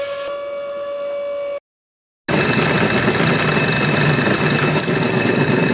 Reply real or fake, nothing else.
real